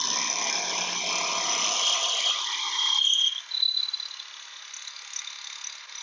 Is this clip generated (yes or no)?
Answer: no